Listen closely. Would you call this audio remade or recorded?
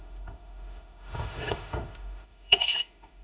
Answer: remade